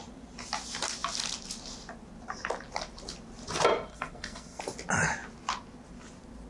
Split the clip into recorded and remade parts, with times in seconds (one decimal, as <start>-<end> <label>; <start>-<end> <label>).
0.0-3.9 recorded; 3.9-4.6 remade; 4.6-6.5 recorded